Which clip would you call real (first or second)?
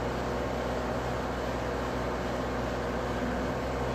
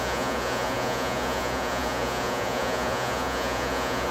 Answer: first